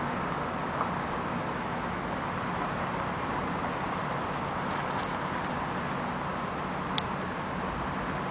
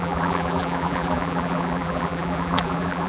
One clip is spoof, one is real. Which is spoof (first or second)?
second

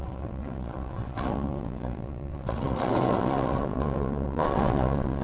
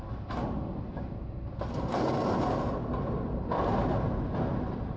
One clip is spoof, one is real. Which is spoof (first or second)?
first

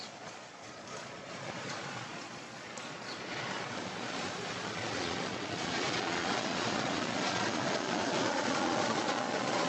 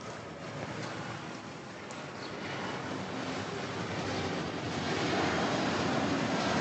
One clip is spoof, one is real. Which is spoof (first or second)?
first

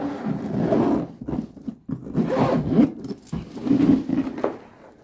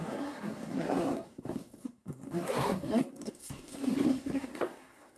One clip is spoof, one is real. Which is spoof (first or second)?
second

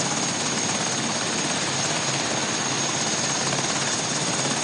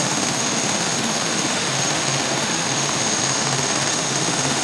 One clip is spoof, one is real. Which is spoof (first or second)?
second